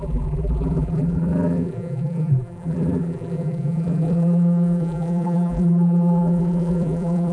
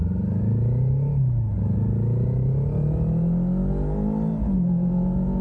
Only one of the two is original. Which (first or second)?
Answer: second